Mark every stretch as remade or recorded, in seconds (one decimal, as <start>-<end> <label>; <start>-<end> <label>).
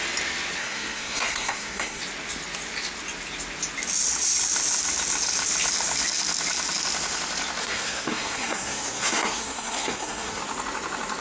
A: 0.0-0.6 recorded; 0.6-2.0 remade; 2.0-7.6 recorded; 7.6-10.4 remade; 10.4-11.2 recorded